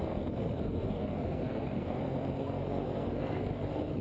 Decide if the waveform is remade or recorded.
remade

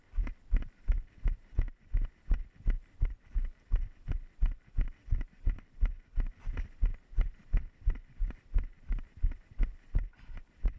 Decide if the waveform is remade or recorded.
remade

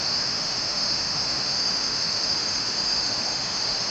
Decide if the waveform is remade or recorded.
remade